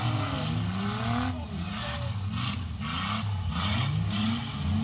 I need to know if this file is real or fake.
real